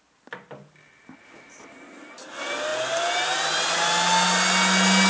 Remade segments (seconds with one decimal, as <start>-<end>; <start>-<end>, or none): none